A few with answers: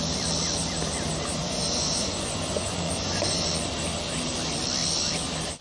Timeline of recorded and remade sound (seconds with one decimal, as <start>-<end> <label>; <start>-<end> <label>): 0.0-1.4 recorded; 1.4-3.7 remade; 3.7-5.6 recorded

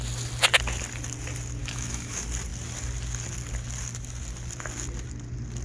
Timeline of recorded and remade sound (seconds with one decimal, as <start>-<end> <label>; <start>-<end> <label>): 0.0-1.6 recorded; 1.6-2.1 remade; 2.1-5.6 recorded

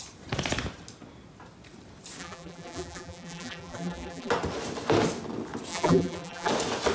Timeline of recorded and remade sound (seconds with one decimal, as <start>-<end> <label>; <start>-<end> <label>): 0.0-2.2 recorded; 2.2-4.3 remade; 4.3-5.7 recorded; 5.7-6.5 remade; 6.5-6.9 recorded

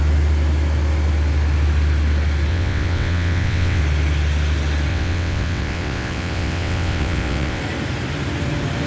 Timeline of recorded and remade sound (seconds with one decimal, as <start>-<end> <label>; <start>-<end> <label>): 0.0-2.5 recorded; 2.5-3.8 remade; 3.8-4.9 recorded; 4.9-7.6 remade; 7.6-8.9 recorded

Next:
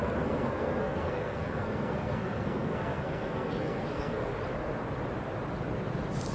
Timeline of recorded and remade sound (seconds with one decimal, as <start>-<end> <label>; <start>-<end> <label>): 0.0-4.3 remade; 4.3-6.3 recorded

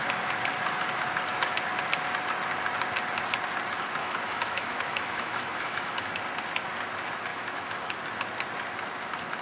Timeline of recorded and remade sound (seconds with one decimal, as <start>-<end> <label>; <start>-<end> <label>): 0.0-4.0 recorded; 4.0-6.2 remade; 6.2-7.3 recorded; 7.3-8.0 remade; 8.0-9.4 recorded